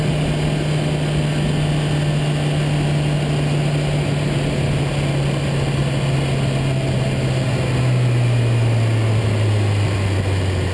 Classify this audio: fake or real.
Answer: real